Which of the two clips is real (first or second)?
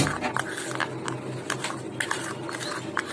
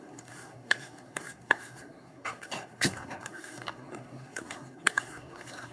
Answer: first